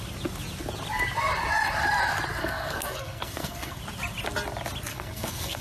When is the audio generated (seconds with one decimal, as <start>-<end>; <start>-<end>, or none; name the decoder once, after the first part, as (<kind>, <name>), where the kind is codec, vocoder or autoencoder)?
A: 2.4-3.8 (codec, SNAC); 4.9-5.6